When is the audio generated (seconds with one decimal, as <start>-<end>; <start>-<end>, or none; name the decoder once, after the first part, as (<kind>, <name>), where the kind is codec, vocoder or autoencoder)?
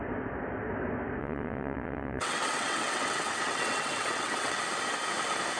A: 1.2-4.6 (vocoder, WaveNeXt)